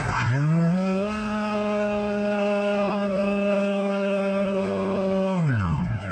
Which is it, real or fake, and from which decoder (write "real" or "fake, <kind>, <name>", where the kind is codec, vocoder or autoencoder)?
fake, codec, SNAC